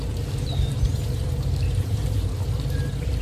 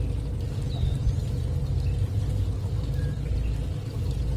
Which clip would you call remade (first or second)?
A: first